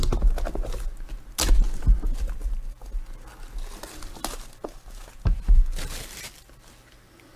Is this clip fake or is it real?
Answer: real